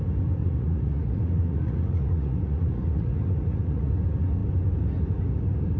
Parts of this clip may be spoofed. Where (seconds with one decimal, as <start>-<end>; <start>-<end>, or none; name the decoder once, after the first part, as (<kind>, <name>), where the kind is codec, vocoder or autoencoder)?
0.4-3.9 (vocoder, Vocos)